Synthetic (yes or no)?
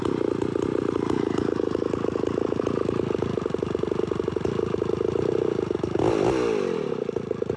no